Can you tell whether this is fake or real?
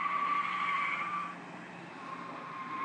real